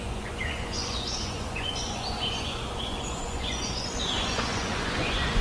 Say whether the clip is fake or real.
fake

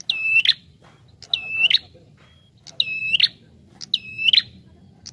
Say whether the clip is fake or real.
real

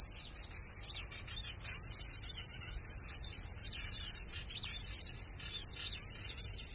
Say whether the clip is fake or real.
real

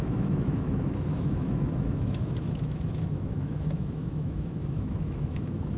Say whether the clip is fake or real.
fake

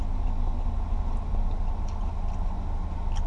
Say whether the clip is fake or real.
real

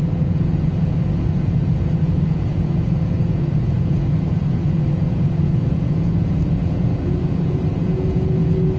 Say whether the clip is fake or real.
fake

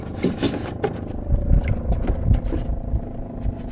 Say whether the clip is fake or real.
real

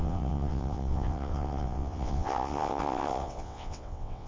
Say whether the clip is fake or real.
fake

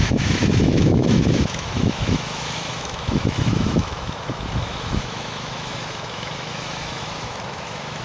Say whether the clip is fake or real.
fake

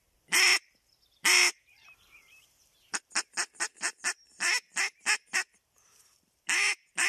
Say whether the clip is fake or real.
fake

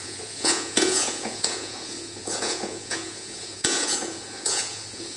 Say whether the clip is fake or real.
fake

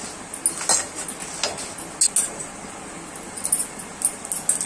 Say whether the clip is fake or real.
real